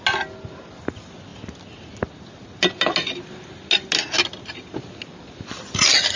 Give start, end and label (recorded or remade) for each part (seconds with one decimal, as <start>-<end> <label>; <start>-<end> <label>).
0.0-6.2 recorded